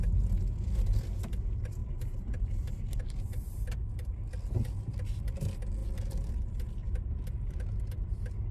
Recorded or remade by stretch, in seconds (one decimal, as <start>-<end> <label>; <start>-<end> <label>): 0.0-5.8 recorded; 5.8-6.3 remade; 6.3-6.8 recorded; 6.8-7.5 remade; 7.5-8.5 recorded